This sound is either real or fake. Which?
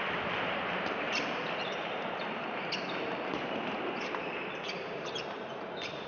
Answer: fake